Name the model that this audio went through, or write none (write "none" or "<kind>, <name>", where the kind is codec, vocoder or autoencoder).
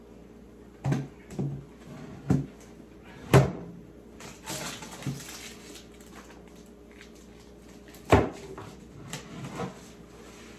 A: none